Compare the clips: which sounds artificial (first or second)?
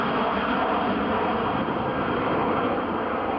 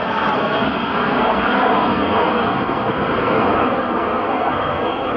second